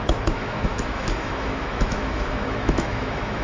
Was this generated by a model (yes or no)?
yes